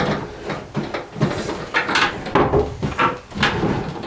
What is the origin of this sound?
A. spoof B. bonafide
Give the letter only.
B